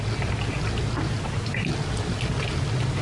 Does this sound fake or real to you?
real